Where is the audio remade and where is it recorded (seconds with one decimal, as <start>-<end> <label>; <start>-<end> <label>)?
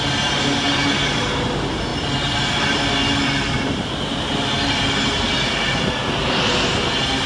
0.0-7.3 recorded